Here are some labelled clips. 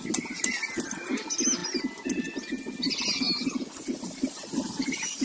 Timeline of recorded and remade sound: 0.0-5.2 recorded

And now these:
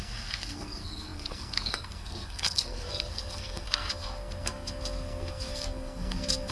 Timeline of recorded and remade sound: 0.0-6.5 remade

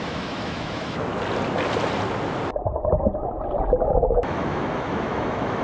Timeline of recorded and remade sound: 0.0-1.1 remade; 1.1-3.8 recorded; 3.8-5.6 remade

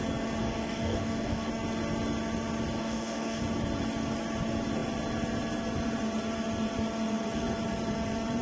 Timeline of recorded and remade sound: 0.0-0.4 recorded; 0.4-1.5 remade; 1.5-2.8 recorded; 2.8-3.4 remade; 3.4-8.4 recorded